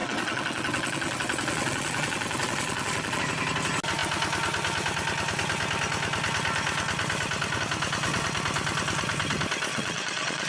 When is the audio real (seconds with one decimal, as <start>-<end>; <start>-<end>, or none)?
3.2-9.7